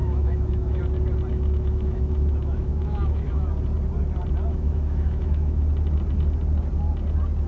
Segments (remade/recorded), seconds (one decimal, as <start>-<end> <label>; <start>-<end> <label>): 0.0-0.8 remade; 0.8-1.3 recorded; 1.3-3.5 remade; 3.5-4.5 recorded; 4.5-5.7 remade; 5.7-7.5 recorded